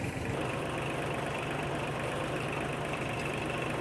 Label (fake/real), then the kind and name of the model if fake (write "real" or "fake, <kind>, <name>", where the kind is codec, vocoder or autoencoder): fake, vocoder, BigVGAN v2